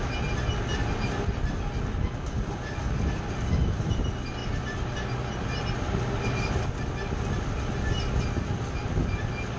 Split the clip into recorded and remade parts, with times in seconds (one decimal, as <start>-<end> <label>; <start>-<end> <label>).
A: 0.0-9.6 recorded